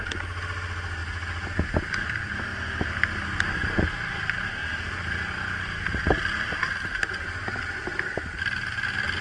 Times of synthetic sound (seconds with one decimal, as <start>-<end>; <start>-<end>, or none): none